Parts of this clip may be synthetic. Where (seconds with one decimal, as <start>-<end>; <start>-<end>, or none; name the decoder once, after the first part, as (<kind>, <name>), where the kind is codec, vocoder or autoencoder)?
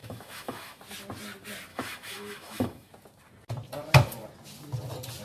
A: 0.0-0.8 (autoencoder, DAC-VAE); 1.7-2.9